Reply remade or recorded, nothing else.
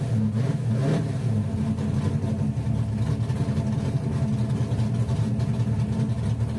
recorded